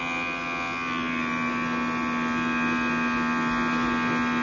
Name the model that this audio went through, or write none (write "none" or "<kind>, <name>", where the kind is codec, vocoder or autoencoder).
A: none